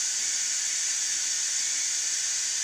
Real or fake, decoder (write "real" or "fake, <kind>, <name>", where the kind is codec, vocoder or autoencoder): real